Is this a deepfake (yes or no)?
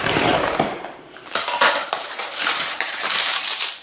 yes